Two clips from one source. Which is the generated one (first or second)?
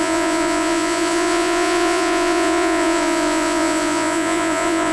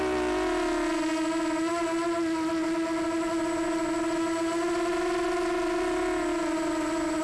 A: first